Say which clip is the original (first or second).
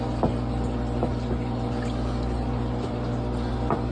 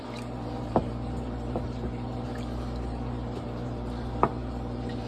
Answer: first